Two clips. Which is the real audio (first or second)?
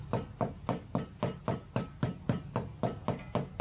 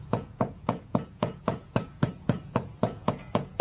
first